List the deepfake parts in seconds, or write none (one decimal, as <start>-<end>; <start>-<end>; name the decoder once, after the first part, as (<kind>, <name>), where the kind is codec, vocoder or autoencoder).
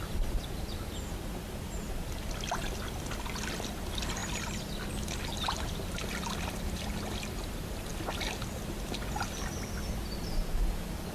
none